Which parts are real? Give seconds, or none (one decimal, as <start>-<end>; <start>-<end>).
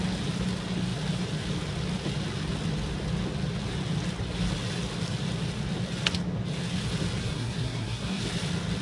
0.0-7.2; 8.2-8.8